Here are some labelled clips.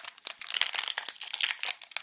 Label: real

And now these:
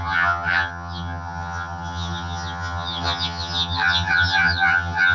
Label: fake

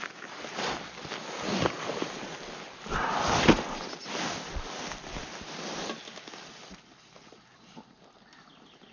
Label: real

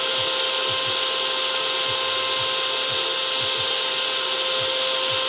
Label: real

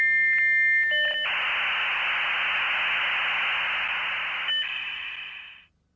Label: real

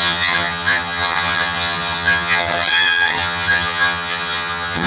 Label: fake